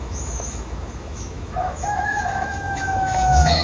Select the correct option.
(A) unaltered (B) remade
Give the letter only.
B